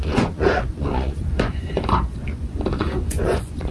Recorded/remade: remade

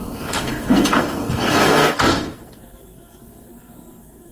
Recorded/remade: remade